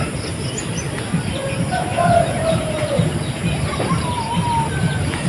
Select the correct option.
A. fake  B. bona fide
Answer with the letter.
B